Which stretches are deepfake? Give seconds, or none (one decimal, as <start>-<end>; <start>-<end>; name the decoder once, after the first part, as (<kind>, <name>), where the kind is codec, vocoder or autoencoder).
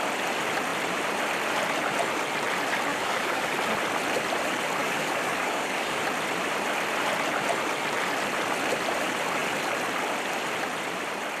2.9-3.5 (codec, DAC); 4.8-6.0